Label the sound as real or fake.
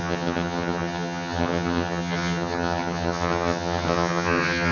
fake